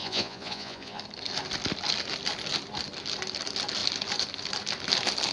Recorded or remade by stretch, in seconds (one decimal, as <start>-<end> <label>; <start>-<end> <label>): 0.0-1.0 remade; 1.0-5.3 recorded

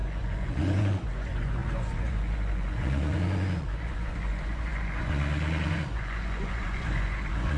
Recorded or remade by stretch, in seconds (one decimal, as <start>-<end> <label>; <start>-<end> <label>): 0.0-7.6 remade

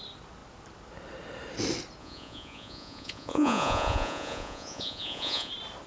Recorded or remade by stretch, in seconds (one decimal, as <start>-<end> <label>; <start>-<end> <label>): 0.0-2.0 recorded; 2.0-5.5 remade; 5.5-5.9 recorded

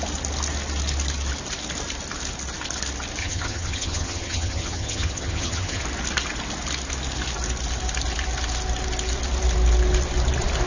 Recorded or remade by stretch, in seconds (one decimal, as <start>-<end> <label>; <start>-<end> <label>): 0.0-3.2 recorded; 3.2-5.8 remade; 5.8-10.7 recorded

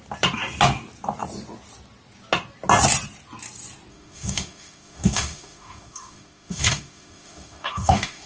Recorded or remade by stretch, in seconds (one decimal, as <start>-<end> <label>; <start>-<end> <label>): 0.0-3.9 recorded; 3.9-8.3 remade